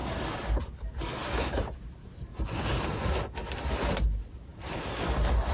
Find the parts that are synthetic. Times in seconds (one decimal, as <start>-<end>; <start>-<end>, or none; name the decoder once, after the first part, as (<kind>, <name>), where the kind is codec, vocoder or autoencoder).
4.5-5.1 (vocoder, BigVGAN v2)